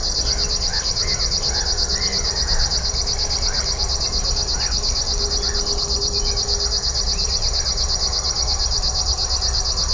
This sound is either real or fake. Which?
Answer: real